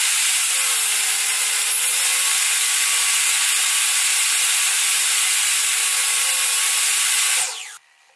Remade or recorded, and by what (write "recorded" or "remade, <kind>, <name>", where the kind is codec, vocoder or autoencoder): recorded